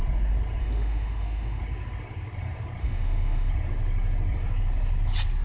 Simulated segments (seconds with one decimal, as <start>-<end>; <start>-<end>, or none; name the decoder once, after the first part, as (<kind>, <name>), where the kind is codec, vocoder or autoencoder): 0.6-1.6 (autoencoder, DAC-VAE); 2.8-3.5